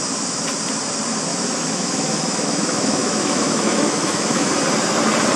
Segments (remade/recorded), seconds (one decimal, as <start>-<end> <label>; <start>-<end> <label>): 0.0-1.3 recorded; 1.3-4.5 remade; 4.5-5.4 recorded